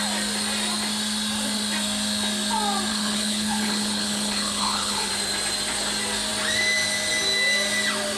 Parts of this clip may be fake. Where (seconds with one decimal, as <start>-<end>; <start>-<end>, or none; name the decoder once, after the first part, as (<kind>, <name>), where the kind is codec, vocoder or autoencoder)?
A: 2.9-5.1 (codec, HILCodec)